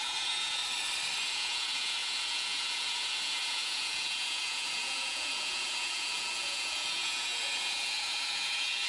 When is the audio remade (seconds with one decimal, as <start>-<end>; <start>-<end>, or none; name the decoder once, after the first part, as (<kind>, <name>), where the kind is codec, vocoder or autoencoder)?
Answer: 0.0-0.6 (vocoder, Vocos); 1.3-8.9